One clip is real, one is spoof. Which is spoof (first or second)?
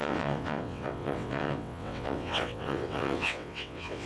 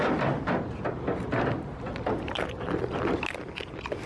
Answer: first